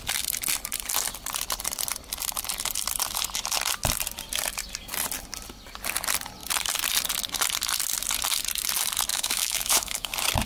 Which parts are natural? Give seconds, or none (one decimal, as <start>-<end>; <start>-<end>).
0.0-9.1; 10.1-10.5